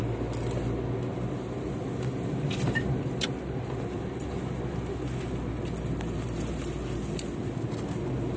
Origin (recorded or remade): recorded